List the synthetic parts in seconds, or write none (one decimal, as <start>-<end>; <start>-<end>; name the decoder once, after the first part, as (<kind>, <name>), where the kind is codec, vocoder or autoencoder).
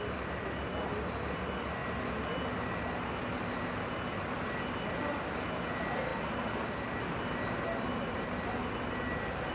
none